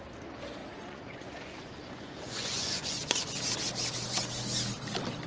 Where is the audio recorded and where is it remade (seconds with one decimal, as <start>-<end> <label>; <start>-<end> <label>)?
0.0-0.6 recorded; 0.6-3.4 remade; 3.4-5.3 recorded